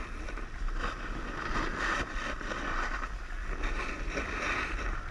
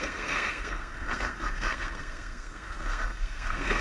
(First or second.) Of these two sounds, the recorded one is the first